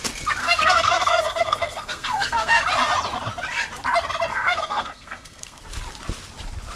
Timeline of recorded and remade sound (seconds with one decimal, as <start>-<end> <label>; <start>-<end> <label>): 0.0-0.4 recorded; 0.4-2.6 remade; 2.6-4.3 recorded; 4.3-5.6 remade; 5.6-6.8 recorded